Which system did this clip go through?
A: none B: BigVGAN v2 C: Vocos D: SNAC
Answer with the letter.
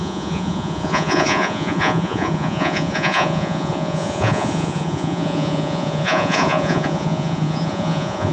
C